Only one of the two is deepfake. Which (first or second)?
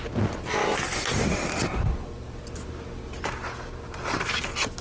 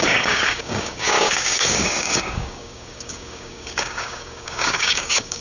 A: second